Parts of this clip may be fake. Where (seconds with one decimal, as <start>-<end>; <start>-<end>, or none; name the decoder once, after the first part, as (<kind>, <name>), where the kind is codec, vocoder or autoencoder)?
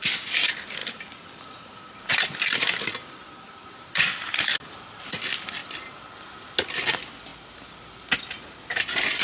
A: none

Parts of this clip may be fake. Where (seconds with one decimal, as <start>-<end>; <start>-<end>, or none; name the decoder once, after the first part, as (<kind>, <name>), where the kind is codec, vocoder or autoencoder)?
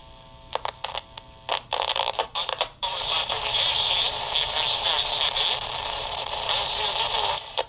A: 1.7-7.7 (vocoder, BigVGAN v2)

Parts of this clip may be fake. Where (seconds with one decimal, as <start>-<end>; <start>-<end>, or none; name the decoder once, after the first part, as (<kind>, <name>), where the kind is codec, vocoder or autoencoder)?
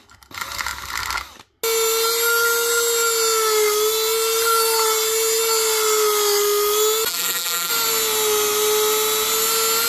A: 7.1-7.7 (vocoder, BigVGAN v2)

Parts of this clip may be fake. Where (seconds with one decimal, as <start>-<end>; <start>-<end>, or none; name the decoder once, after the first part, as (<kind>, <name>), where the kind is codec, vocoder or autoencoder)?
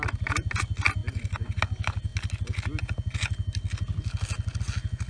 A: none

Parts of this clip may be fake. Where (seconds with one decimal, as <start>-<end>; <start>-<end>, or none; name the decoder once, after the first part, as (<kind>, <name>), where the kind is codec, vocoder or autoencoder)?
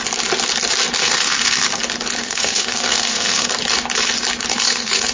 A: 1.0-1.8 (codec, SNAC); 2.2-3.5; 4.5-5.1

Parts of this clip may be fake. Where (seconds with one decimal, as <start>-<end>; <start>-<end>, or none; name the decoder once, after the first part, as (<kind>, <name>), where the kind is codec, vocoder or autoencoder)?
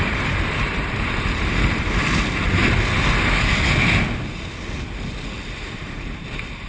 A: 0.0-2.0 (vocoder, BigVGAN v2); 5.7-6.7